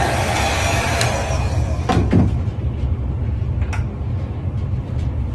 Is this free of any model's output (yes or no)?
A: yes